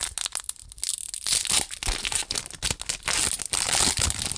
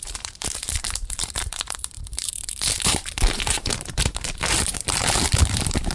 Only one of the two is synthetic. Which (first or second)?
second